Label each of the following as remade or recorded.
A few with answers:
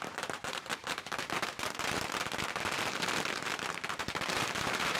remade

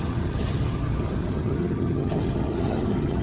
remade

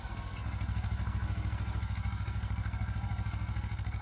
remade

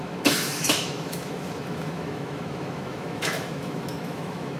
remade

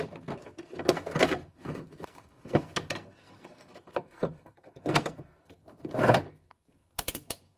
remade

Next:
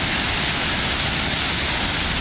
recorded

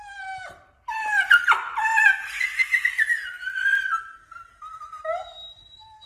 recorded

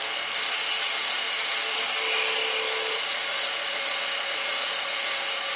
recorded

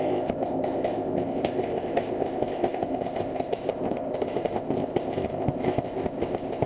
remade